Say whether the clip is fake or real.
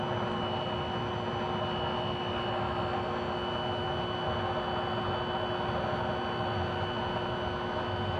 real